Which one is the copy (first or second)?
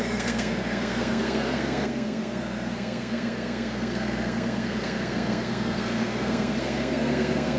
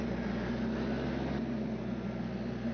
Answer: first